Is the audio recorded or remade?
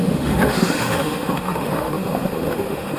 remade